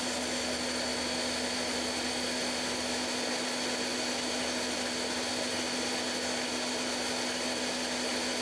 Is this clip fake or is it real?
real